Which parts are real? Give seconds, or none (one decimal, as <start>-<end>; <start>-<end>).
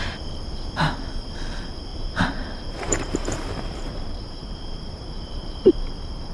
0.0-1.9; 5.7-6.3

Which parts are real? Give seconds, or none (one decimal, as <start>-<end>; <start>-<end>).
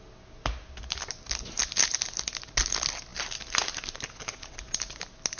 0.0-5.4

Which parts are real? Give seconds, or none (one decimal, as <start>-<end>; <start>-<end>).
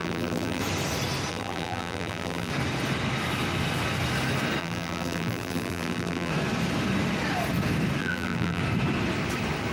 0.6-1.3; 2.5-4.6; 6.3-8.0; 8.6-9.7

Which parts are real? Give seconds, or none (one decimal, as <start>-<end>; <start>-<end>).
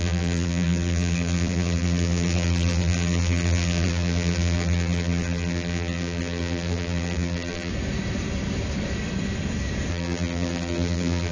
7.7-9.9